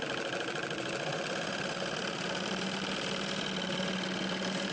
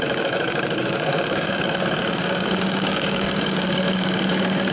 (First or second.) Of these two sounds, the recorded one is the first